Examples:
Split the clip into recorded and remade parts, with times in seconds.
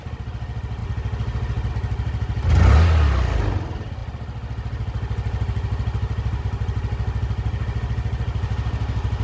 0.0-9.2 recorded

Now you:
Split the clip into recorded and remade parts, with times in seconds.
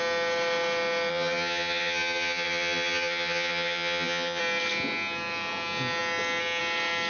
0.0-1.1 recorded; 1.1-4.4 remade; 4.4-7.1 recorded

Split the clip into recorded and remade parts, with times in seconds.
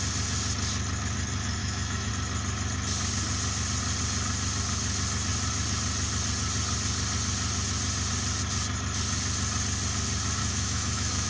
0.0-1.6 recorded; 1.6-2.1 remade; 2.1-10.4 recorded; 10.4-11.3 remade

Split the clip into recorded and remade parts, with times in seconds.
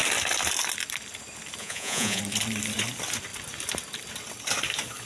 0.0-1.6 recorded; 1.6-2.2 remade; 2.2-5.1 recorded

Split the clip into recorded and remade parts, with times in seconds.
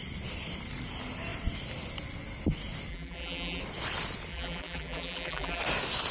0.0-2.9 recorded; 2.9-3.6 remade; 3.6-4.3 recorded; 4.3-5.6 remade; 5.6-6.1 recorded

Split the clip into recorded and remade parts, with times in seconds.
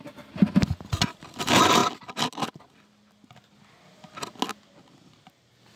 0.0-5.8 recorded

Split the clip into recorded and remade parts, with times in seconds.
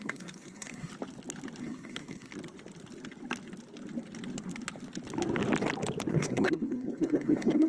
0.0-0.9 remade; 0.9-1.6 recorded; 1.6-2.3 remade; 2.3-6.1 recorded; 6.1-7.7 remade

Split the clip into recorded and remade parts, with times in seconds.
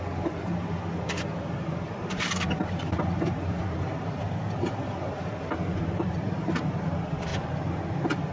0.0-7.3 remade; 7.3-8.3 recorded